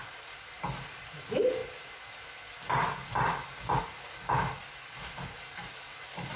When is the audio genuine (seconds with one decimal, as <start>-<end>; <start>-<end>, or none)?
0.0-6.4